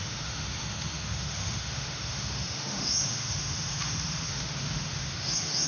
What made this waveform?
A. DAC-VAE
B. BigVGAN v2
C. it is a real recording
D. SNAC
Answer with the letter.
A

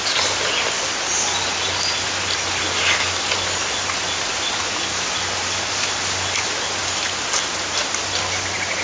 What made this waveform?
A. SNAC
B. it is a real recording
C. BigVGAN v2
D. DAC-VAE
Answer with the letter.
B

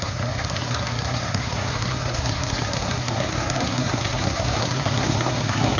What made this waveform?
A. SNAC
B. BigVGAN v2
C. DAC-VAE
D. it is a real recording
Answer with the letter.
A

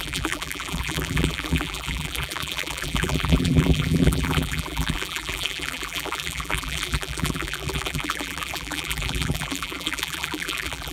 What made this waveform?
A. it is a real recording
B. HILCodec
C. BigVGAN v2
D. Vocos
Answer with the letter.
C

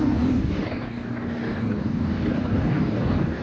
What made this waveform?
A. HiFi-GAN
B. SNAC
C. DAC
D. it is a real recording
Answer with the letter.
C